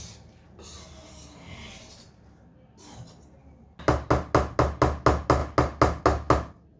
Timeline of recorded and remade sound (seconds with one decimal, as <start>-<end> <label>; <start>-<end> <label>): 0.0-6.8 recorded